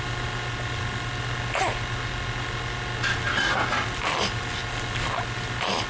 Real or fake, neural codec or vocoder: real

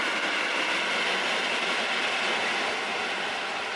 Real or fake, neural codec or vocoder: real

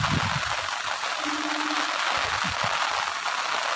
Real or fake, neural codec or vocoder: real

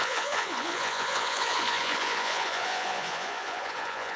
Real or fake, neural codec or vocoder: fake, vocoder, Vocos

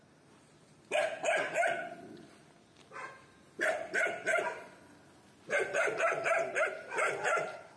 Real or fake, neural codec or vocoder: real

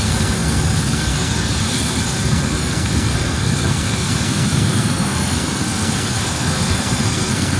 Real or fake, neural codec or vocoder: fake, codec, SNAC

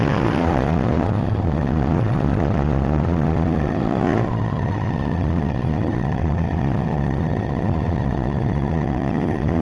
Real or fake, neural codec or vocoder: fake, vocoder, Vocos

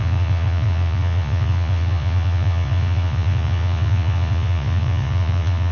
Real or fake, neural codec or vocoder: fake, vocoder, Vocos